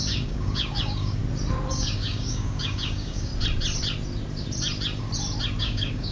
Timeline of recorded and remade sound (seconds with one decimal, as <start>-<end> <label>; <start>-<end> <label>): 0.0-1.2 remade; 1.2-1.7 recorded; 1.7-3.3 remade; 3.3-5.6 recorded; 5.6-6.1 remade